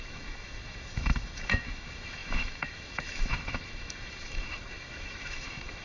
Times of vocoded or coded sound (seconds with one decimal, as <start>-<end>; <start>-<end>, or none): 0.0-5.8